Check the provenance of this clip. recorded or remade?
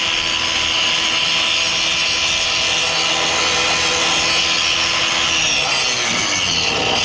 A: recorded